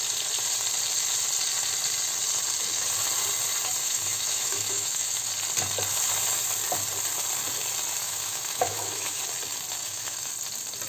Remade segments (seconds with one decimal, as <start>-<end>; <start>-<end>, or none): 3.8-5.3; 8.0-9.2; 9.8-10.3